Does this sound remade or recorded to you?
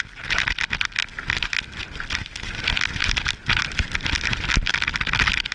recorded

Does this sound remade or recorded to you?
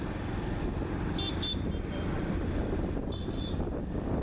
recorded